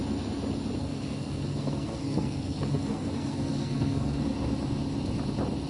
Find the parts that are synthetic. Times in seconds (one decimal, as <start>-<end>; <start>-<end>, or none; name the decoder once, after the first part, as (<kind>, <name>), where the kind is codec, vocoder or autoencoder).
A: 0.8-4.2 (codec, SNAC)